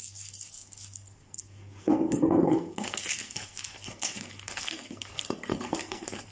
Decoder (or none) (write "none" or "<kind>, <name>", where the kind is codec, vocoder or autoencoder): codec, SNAC